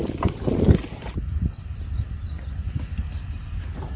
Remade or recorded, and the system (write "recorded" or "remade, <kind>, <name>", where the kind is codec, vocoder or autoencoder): recorded